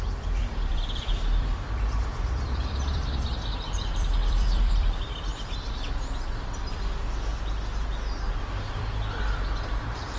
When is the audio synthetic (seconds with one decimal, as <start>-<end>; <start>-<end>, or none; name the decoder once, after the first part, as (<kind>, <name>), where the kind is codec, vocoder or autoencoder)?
0.0-5.3 (vocoder, BigVGAN v2); 6.3-7.3; 8.7-10.2